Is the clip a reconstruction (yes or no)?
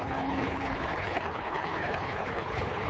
yes